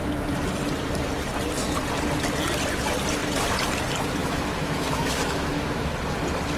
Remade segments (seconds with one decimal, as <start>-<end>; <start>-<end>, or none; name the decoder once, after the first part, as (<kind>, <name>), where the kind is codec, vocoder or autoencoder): 4.2-5.9 (autoencoder, DAC-VAE)